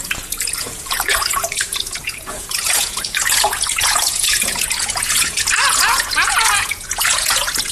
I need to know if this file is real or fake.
fake